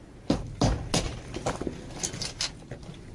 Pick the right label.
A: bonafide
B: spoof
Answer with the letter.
A